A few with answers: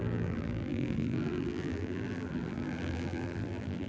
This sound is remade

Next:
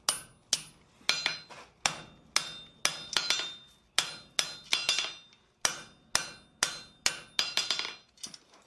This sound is recorded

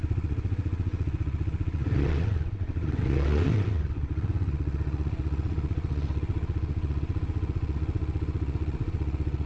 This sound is remade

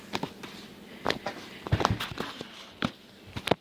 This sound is recorded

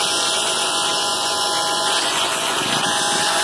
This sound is remade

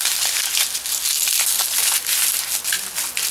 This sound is recorded